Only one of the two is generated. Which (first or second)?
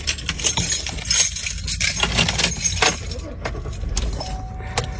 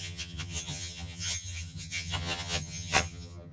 second